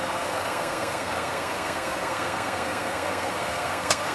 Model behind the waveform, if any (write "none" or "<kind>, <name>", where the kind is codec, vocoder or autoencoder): codec, SNAC